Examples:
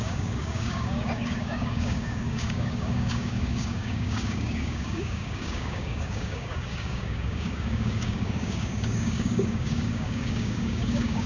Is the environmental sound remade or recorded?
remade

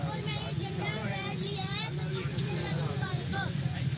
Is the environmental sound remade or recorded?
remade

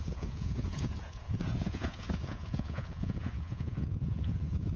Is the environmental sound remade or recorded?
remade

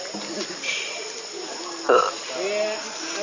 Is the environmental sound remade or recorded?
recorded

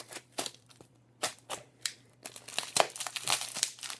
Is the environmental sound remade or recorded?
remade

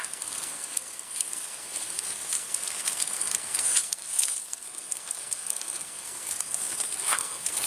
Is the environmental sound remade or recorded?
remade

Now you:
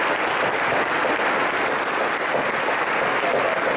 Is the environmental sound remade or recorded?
recorded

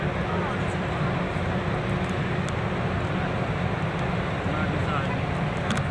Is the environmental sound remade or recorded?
recorded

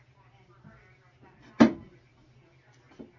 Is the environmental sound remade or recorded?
recorded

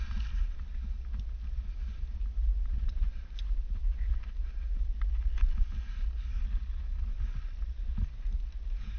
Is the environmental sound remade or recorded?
recorded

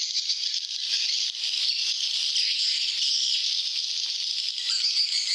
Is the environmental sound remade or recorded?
recorded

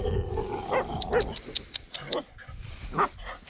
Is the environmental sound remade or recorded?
recorded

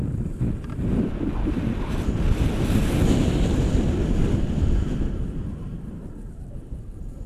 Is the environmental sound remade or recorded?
recorded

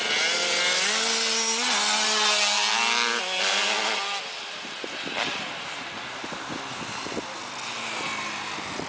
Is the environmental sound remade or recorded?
recorded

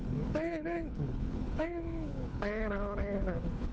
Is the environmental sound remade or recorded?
remade